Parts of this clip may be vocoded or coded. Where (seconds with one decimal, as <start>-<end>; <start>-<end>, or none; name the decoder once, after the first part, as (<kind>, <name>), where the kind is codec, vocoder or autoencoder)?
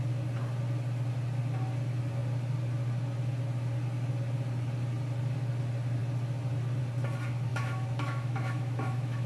7.5-9.3 (autoencoder, DAC-VAE)